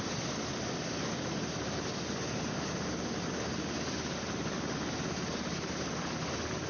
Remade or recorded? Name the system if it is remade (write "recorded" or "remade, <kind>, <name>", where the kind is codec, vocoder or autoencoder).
recorded